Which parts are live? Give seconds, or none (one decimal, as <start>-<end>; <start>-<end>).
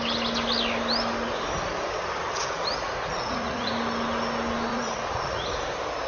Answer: 0.0-2.8; 3.7-4.7; 5.5-6.1